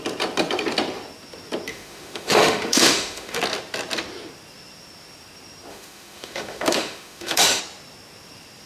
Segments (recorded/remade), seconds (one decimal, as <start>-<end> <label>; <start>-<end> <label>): 0.0-1.7 recorded; 1.7-3.4 remade; 3.4-5.7 recorded; 5.7-7.6 remade; 7.6-8.7 recorded